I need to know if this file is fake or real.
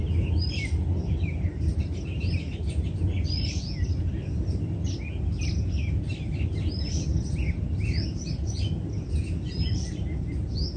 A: real